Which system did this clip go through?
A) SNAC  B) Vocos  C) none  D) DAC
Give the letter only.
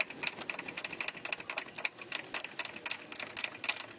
C